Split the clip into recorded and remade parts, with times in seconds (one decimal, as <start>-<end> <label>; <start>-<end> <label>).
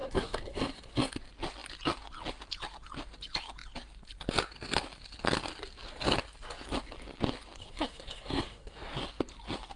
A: 0.0-1.1 remade; 1.1-7.6 recorded; 7.6-8.9 remade; 8.9-9.8 recorded